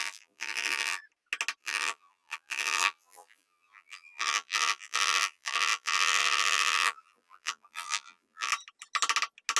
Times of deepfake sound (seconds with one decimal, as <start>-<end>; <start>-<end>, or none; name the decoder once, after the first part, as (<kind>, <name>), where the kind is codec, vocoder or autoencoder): 0.0-1.0 (vocoder, BigVGAN v2); 1.6-8.5